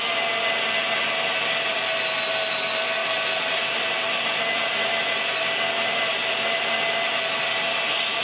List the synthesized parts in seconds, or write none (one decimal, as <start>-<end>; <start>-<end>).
none